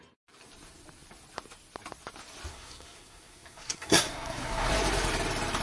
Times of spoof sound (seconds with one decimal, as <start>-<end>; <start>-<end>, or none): 2.5-4.7